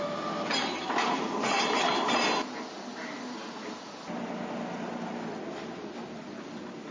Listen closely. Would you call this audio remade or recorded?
recorded